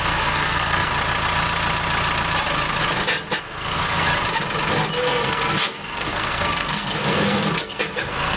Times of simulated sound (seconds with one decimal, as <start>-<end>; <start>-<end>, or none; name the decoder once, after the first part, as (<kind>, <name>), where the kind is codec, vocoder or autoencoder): 0.0-0.9 (codec, SNAC); 3.4-4.1; 5.0-8.4